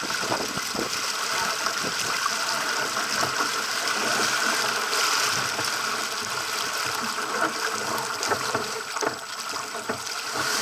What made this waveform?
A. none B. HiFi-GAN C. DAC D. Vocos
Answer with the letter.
A